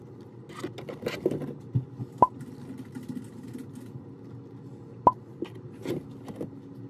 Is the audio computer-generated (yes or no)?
no